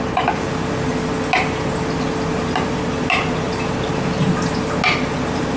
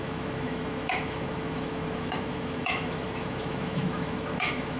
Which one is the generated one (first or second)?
second